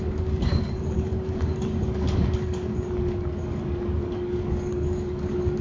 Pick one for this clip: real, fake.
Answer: fake